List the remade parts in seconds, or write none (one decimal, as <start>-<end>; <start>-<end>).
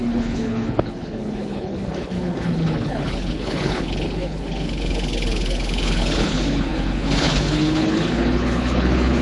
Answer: 0.0-9.2